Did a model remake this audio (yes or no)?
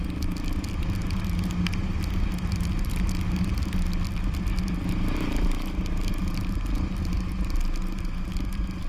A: no